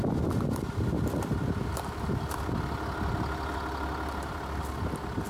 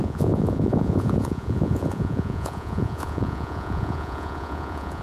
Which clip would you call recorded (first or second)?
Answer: first